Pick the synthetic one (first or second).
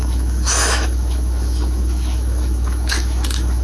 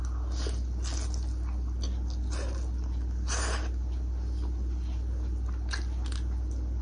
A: first